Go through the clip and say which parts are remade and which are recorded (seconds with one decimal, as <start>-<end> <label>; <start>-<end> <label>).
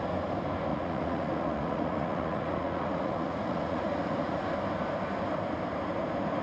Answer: 0.0-0.7 recorded; 0.7-4.5 remade; 4.5-6.4 recorded